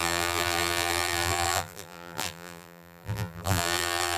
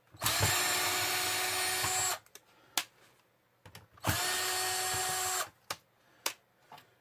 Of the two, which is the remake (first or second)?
first